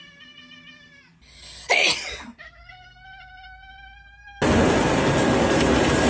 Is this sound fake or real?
real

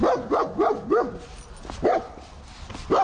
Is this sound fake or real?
real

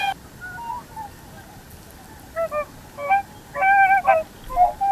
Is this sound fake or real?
real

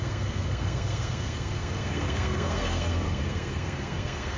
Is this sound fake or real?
fake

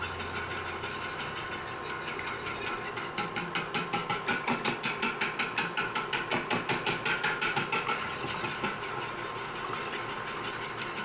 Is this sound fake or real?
real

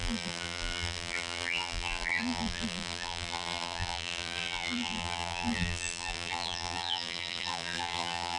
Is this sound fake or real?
fake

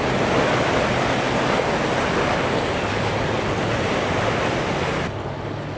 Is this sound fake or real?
real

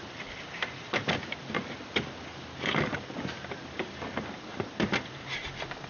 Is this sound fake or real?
real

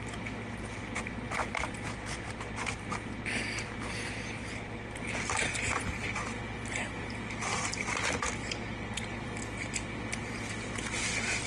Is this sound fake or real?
real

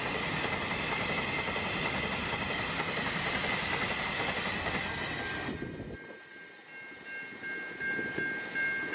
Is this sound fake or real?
real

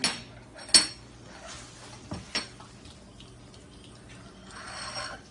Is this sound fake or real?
real